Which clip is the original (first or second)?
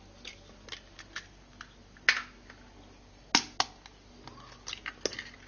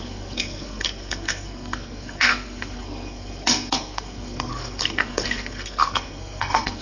first